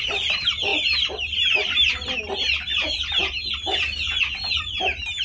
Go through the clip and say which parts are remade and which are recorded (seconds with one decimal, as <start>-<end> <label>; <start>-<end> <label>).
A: 0.0-0.7 remade; 0.7-1.3 recorded; 1.3-2.7 remade; 2.7-4.6 recorded; 4.6-5.2 remade